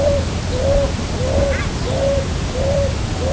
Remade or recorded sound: recorded